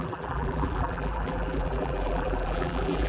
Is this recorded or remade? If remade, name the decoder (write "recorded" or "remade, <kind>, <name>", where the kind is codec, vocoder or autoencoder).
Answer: remade, vocoder, BigVGAN v2